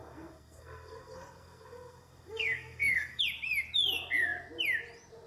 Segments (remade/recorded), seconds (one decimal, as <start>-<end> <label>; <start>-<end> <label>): 0.0-3.2 remade; 3.2-5.3 recorded